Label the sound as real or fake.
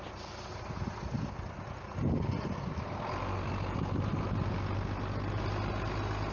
real